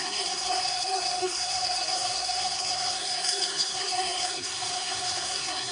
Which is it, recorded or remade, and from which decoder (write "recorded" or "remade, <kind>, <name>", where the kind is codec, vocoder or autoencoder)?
remade, codec, SNAC